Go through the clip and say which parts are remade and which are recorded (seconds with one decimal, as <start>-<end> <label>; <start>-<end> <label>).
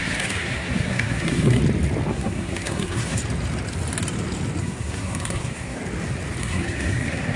0.0-1.6 remade; 1.6-2.1 recorded; 2.1-3.2 remade; 3.2-4.6 recorded; 4.6-5.8 remade; 5.8-6.4 recorded; 6.4-7.4 remade